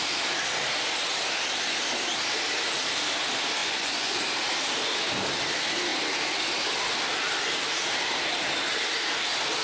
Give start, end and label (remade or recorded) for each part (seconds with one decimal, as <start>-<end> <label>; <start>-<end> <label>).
0.0-3.6 recorded; 3.6-4.2 remade; 4.2-9.6 recorded